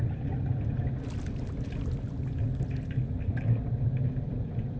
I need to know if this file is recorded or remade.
recorded